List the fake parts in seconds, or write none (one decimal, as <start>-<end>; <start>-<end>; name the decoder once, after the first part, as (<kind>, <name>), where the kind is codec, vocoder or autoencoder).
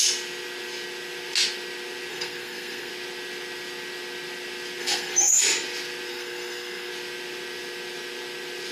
2.1-2.9 (codec, SNAC); 4.8-5.4; 6.1-6.9